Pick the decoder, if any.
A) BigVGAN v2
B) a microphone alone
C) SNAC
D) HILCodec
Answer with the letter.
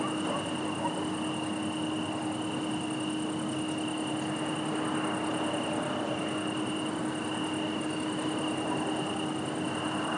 B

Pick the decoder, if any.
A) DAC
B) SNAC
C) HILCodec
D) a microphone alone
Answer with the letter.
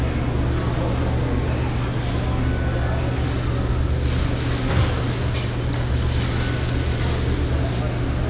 D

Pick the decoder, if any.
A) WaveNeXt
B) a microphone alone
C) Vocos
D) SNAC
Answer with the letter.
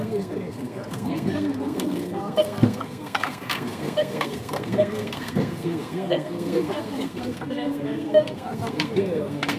D